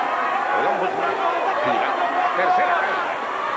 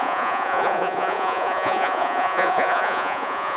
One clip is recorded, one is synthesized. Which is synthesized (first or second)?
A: second